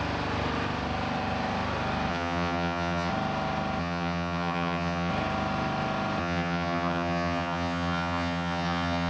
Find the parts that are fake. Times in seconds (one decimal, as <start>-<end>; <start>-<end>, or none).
2.1-3.1; 3.8-5.1; 6.2-9.1